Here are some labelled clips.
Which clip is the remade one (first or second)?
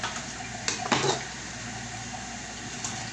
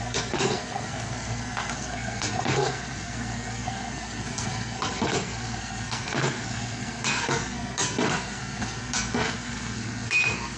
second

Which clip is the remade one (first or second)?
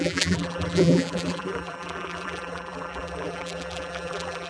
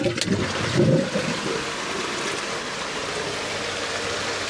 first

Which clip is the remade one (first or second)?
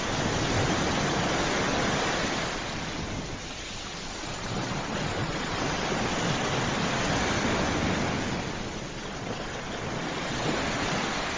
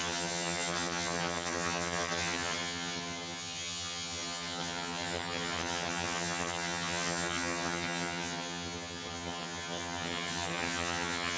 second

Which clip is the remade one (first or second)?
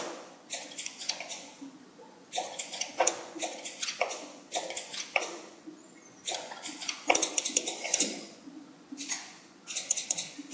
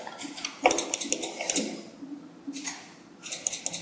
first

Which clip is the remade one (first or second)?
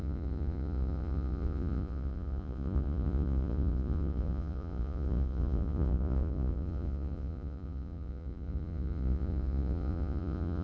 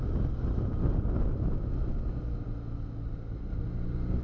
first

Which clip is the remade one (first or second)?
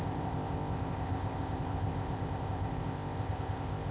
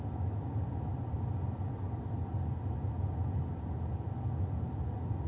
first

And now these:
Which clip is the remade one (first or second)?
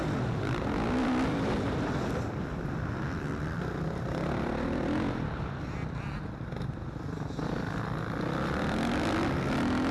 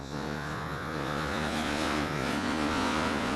second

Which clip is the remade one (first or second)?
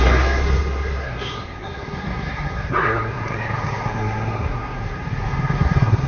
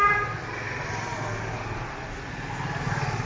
first